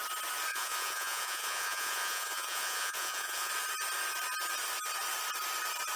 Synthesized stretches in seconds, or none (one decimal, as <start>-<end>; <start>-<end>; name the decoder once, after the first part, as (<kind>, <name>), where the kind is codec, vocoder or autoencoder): 0.5-3.5 (vocoder, Vocos)